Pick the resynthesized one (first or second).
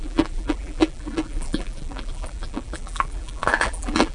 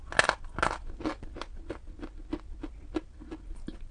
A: first